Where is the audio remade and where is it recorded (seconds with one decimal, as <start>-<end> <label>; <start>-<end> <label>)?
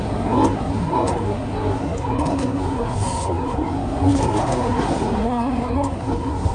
0.0-6.5 remade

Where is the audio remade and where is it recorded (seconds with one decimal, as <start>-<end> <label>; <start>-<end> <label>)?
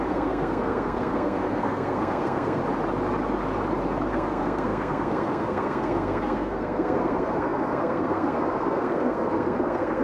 0.0-2.6 remade; 2.6-4.1 recorded; 4.1-10.0 remade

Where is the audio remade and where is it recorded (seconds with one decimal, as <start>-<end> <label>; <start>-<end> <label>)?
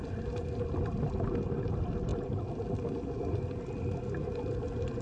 0.0-5.0 recorded